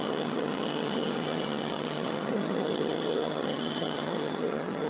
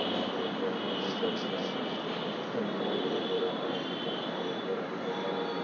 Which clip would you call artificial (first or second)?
first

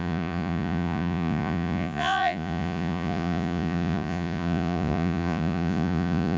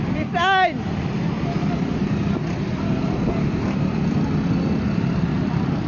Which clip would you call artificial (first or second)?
first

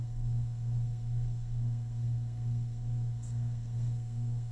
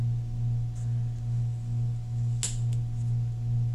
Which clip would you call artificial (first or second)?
first